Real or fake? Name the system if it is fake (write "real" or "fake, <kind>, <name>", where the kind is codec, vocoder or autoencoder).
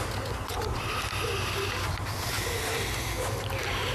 real